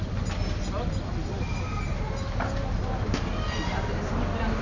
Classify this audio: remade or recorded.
recorded